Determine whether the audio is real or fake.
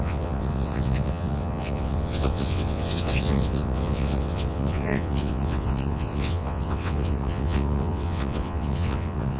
fake